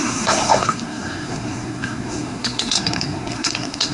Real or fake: fake